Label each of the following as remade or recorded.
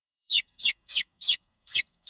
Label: remade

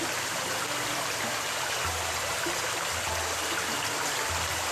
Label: recorded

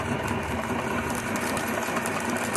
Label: recorded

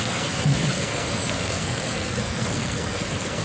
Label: remade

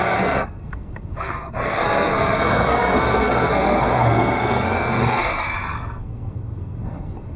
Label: remade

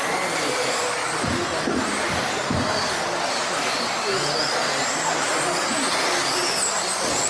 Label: recorded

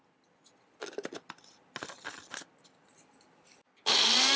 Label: recorded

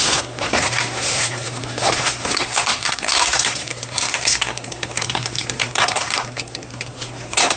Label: remade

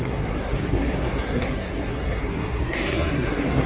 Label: remade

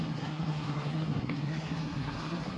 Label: remade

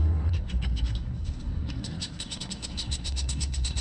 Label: remade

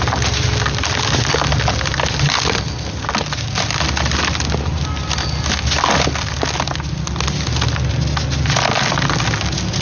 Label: recorded